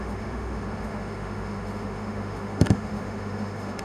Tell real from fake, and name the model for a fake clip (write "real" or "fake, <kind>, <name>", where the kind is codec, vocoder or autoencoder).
fake, autoencoder, DAC-VAE